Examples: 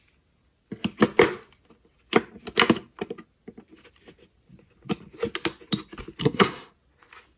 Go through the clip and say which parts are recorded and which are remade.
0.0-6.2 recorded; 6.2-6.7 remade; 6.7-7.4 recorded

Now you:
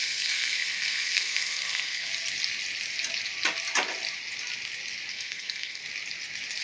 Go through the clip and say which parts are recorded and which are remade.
0.0-2.1 remade; 2.1-5.1 recorded; 5.1-5.8 remade; 5.8-6.6 recorded